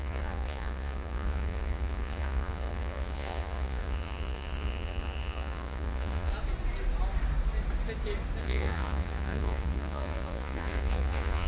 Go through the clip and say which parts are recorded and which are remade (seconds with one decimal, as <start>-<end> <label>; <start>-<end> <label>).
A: 0.0-6.3 remade; 6.3-8.4 recorded; 8.4-11.5 remade